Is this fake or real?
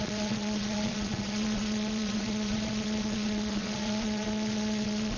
fake